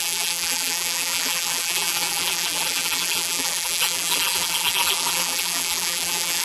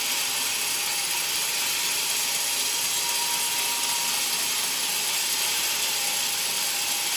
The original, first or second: second